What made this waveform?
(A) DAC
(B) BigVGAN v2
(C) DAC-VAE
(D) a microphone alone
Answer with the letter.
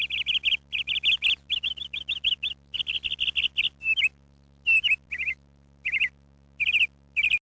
D